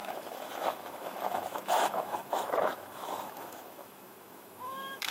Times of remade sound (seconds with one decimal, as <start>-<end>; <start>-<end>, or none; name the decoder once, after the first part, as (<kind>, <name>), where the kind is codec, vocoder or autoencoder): 0.0-5.1 (autoencoder, DAC-VAE)